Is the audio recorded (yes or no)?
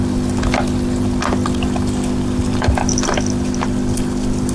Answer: yes